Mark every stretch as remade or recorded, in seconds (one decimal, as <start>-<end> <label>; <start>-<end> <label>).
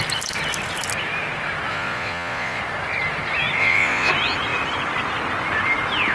0.0-1.7 recorded; 1.7-2.6 remade; 2.6-3.6 recorded; 3.6-4.1 remade; 4.1-6.1 recorded